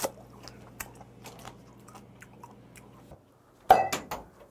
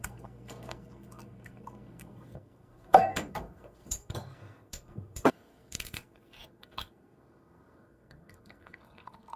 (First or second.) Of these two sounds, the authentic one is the first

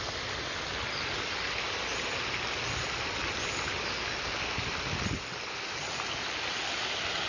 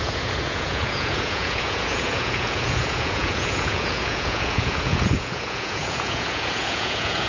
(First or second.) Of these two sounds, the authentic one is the first